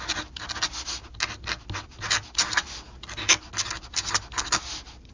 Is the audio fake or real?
real